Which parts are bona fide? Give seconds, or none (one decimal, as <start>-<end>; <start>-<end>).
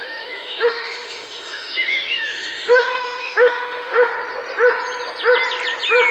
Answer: 4.1-6.1